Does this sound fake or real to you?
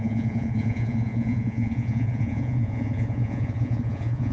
fake